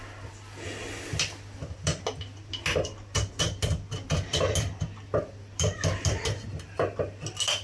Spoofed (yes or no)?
no